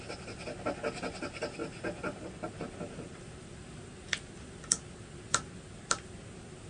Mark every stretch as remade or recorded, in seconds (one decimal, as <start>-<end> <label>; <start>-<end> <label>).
0.0-6.7 recorded

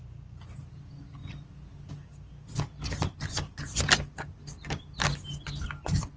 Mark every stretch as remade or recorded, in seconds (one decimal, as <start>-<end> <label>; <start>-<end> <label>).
0.0-6.2 recorded

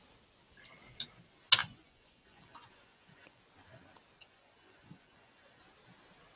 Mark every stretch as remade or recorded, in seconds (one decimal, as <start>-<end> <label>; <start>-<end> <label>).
0.0-1.6 recorded; 1.6-3.4 remade; 3.4-4.2 recorded; 4.2-5.6 remade; 5.6-6.4 recorded

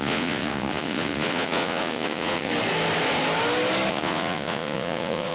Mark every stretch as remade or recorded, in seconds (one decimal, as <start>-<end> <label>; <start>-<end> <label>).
0.0-2.5 remade; 2.5-3.9 recorded; 3.9-5.3 remade